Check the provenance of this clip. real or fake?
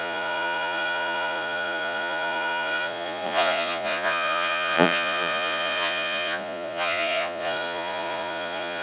fake